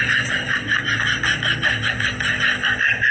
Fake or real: real